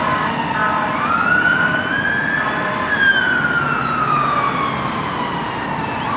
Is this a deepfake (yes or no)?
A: no